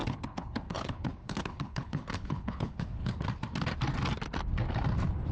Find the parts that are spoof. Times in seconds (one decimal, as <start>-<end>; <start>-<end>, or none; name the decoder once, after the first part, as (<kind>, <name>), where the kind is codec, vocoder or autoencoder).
0.0-3.2 (codec, HILCodec)